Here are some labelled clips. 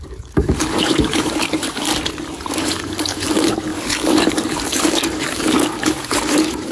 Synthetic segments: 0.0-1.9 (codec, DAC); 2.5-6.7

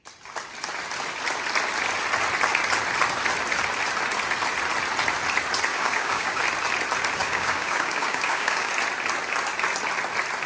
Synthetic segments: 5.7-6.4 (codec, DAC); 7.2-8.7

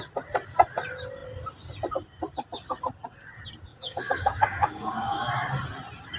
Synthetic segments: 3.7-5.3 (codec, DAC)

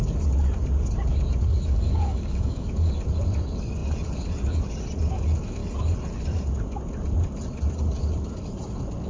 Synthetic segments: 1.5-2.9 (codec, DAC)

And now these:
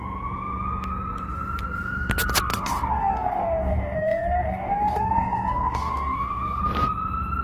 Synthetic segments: 2.5-6.6 (codec, DAC)